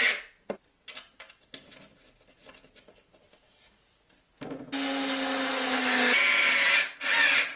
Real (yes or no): yes